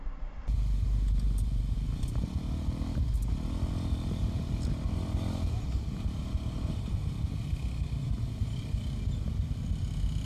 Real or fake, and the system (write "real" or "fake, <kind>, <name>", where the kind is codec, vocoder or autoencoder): real